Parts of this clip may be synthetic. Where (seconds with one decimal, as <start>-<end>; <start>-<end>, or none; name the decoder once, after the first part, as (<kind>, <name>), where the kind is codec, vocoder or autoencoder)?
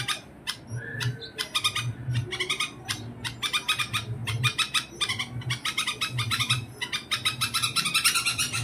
none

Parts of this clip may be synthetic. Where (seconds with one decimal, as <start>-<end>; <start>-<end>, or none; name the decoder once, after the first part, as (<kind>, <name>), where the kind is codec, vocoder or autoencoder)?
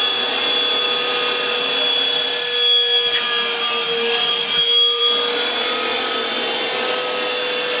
none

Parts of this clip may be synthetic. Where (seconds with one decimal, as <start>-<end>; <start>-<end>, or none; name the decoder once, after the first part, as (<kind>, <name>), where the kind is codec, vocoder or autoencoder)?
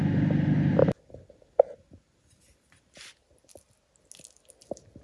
none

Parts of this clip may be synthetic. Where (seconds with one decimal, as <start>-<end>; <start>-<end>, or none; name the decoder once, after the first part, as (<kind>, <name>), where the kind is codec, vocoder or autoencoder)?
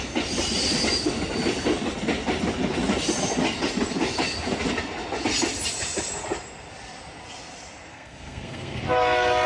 7.9-8.8 (codec, SNAC)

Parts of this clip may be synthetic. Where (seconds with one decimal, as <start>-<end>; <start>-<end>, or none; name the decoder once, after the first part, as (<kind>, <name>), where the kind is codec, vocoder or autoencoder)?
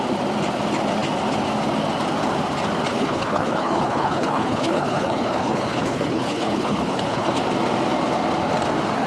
2.9-7.3 (codec, HILCodec)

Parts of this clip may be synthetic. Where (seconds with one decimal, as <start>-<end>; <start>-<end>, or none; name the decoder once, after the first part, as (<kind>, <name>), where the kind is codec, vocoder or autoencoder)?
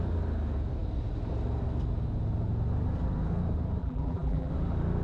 3.8-4.5 (vocoder, BigVGAN v2)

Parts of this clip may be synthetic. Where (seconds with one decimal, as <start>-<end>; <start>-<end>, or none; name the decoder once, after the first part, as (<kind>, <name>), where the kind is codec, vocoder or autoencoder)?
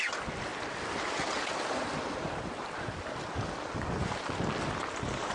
0.5-3.3 (vocoder, BigVGAN v2)